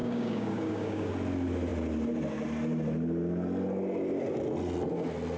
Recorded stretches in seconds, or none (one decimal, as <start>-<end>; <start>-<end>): 1.1-5.4